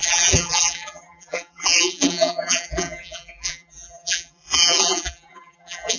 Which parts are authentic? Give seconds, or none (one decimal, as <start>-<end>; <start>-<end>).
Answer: none